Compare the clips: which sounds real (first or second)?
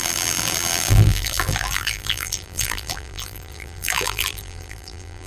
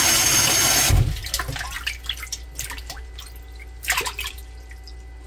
second